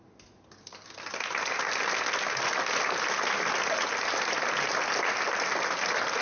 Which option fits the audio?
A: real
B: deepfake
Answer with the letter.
A